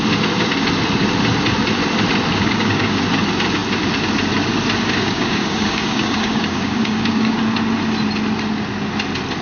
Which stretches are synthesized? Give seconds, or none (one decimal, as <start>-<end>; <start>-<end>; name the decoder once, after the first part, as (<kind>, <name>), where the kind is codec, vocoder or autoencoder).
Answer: 2.3-3.0 (codec, DAC); 4.9-7.4